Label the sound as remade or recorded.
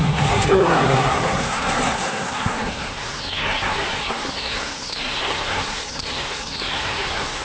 remade